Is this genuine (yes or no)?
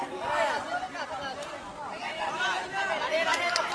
yes